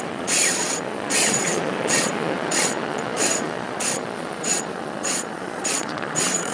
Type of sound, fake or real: fake